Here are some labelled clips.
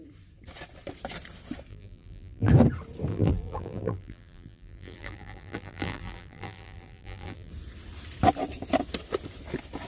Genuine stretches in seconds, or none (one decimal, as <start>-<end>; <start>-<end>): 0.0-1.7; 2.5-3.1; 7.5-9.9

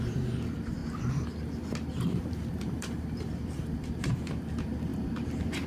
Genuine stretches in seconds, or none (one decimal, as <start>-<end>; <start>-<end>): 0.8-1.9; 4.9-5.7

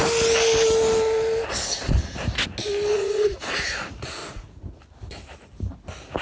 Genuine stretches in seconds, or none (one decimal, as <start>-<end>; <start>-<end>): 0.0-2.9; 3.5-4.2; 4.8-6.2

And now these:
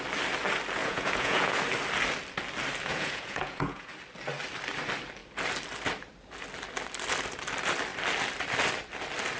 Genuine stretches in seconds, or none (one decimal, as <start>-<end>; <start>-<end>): 0.0-0.8; 1.6-2.9; 3.9-9.4

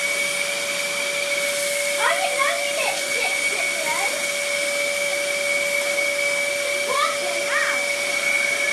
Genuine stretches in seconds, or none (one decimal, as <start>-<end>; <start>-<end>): 0.0-2.8; 3.6-8.7